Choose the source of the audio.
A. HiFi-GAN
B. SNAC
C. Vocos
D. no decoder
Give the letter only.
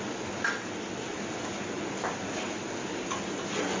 D